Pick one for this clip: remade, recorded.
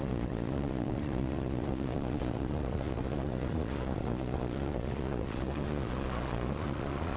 remade